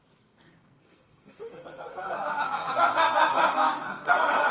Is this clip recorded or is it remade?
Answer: remade